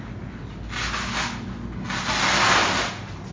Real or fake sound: real